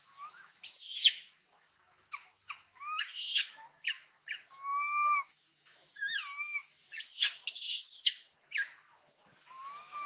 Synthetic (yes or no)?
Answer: yes